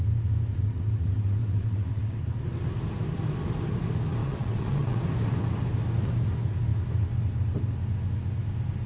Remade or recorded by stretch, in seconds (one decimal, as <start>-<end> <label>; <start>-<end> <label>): 0.0-0.5 recorded; 0.5-2.2 remade; 2.2-4.2 recorded; 4.2-5.0 remade; 5.0-8.9 recorded